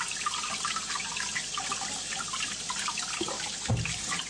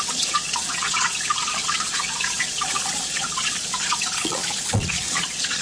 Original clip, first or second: first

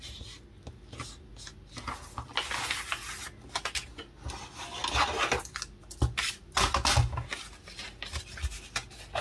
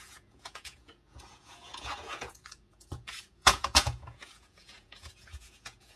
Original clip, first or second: first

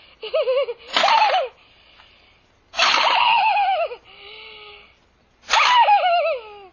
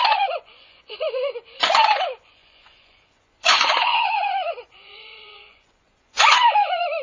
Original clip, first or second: first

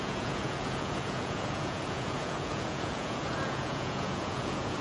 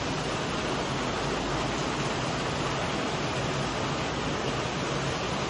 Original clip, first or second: second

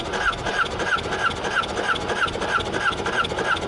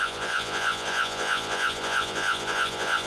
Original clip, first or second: first